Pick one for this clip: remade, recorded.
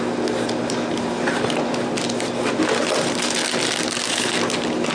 recorded